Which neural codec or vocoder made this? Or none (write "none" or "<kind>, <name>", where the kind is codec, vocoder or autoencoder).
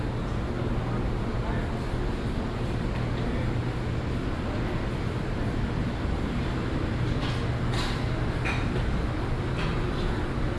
none